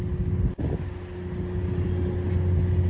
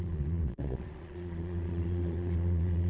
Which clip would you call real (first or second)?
first